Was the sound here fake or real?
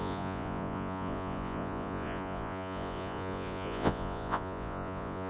fake